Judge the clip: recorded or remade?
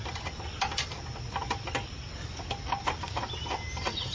recorded